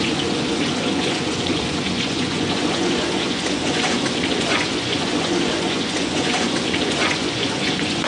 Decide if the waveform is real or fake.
fake